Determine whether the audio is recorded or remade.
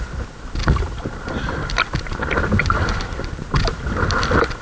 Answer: recorded